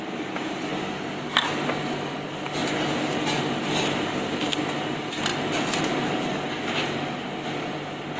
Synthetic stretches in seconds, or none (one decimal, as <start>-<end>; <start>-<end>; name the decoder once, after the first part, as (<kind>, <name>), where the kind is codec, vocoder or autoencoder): none